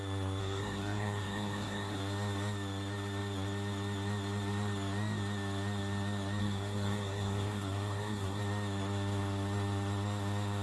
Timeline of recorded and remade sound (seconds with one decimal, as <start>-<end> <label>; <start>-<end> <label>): 0.0-0.4 recorded; 0.4-2.0 remade; 2.0-6.4 recorded; 6.4-8.4 remade; 8.4-10.6 recorded

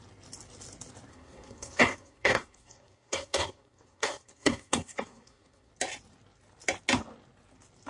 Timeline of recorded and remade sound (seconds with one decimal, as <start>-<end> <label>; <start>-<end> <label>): 0.0-1.1 recorded; 1.1-5.7 remade; 5.7-7.9 recorded

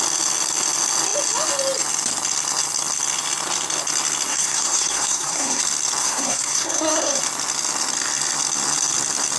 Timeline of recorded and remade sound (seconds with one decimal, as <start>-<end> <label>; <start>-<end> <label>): 0.0-4.3 recorded; 4.3-5.6 remade; 5.6-6.0 recorded; 6.0-7.2 remade; 7.2-9.4 recorded

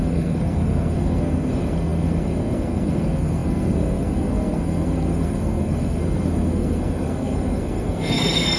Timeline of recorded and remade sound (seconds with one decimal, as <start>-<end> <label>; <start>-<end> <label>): 0.0-8.6 remade

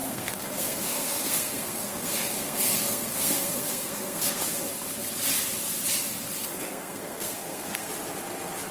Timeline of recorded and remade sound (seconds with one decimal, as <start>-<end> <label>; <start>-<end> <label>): 0.0-4.6 remade; 4.6-6.4 recorded; 6.4-7.9 remade; 7.9-8.7 recorded

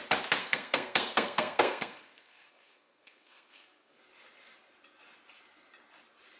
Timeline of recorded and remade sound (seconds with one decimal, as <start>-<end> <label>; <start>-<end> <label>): 0.0-0.4 recorded; 0.4-4.0 remade; 4.0-6.4 recorded

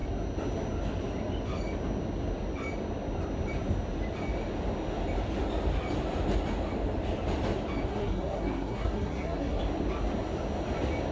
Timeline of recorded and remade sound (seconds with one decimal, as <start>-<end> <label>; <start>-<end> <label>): 0.0-7.9 recorded; 7.9-9.6 remade; 9.6-11.1 recorded

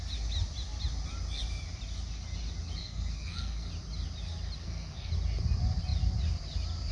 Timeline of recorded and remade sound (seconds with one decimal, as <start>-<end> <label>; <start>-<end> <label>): 0.0-2.8 recorded; 2.8-3.7 remade; 3.7-4.6 recorded; 4.6-5.1 remade; 5.1-6.9 recorded